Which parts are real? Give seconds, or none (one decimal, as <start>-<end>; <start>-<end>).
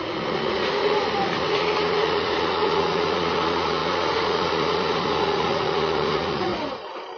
6.5-7.2